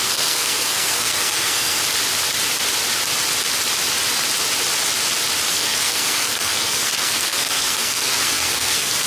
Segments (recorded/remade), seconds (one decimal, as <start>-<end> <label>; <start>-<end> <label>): 0.0-1.8 remade; 1.8-5.5 recorded; 5.5-9.1 remade

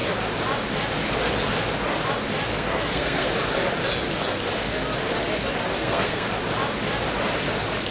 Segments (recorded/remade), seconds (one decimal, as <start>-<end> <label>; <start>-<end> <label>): 0.0-2.5 recorded; 2.5-3.3 remade; 3.3-5.8 recorded; 5.8-6.3 remade; 6.3-7.9 recorded

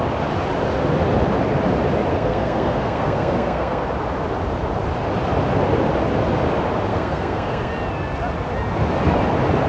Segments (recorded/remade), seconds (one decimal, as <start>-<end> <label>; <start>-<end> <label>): 0.0-2.1 recorded; 2.1-3.8 remade; 3.8-6.9 recorded; 6.9-7.7 remade; 7.7-9.7 recorded